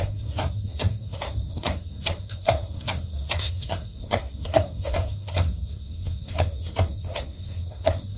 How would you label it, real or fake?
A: fake